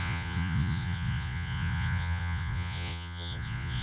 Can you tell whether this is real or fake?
fake